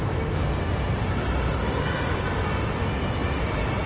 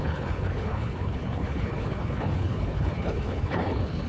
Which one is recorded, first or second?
first